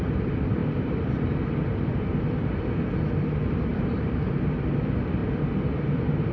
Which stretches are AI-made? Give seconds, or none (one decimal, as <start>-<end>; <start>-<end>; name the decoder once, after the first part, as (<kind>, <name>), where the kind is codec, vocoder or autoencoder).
0.6-2.9 (vocoder, BigVGAN v2); 3.7-4.6

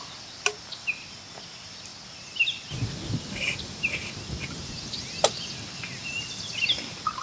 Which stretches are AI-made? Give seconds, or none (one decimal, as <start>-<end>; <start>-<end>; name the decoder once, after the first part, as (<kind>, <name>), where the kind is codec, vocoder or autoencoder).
none

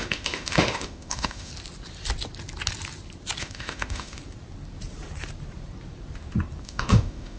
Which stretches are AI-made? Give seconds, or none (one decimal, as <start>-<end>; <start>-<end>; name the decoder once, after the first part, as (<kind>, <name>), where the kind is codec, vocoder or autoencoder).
0.0-1.5 (autoencoder, DAC-VAE); 3.4-4.2; 6.6-7.4

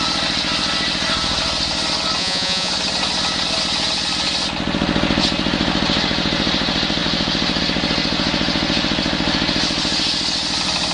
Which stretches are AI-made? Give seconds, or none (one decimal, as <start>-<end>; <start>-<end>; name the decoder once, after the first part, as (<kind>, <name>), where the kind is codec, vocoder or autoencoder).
2.2-2.7 (vocoder, Vocos)